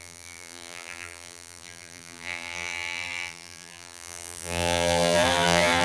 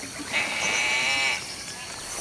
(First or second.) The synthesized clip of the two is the first